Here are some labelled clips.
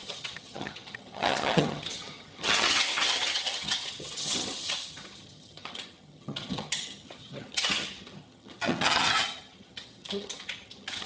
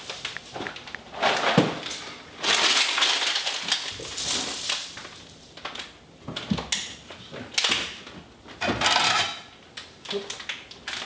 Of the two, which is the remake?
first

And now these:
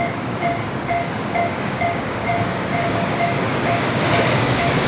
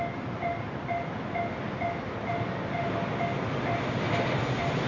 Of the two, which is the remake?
first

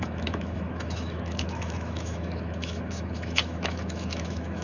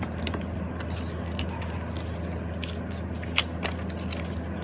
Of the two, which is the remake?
first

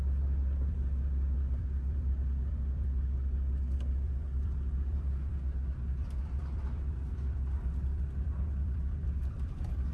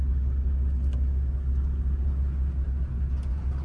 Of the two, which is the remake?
first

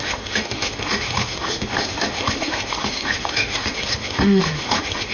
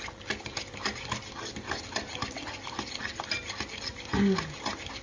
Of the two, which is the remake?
first